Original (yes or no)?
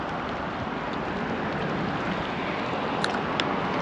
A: yes